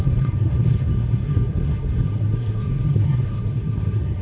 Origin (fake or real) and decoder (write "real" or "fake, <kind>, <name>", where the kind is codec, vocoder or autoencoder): fake, codec, SNAC